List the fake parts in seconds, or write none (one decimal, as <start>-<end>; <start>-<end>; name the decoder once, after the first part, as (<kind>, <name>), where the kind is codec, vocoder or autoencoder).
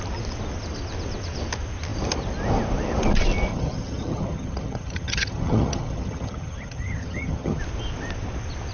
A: 3.5-7.6 (vocoder, HiFi-GAN)